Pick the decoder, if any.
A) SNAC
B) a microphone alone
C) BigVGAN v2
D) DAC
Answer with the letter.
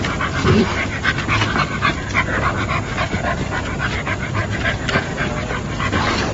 B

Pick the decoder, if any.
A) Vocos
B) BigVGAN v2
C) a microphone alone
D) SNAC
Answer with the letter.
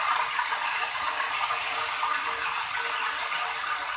C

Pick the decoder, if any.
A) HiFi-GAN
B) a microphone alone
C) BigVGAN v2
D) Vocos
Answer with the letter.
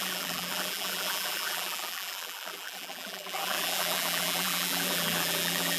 C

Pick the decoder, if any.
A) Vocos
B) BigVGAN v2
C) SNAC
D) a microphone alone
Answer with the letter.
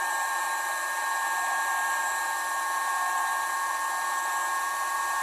B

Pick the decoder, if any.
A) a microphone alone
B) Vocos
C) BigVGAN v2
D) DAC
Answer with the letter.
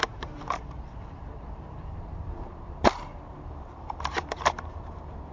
C